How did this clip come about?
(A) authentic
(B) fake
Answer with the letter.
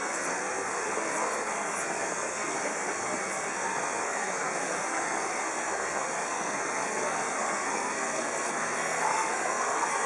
B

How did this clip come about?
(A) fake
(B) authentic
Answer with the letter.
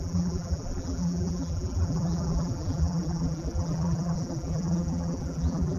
A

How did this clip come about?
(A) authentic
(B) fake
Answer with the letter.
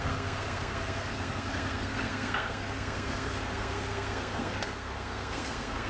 B